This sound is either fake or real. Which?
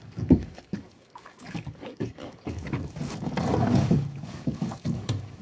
fake